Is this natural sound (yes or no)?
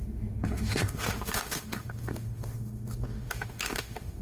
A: no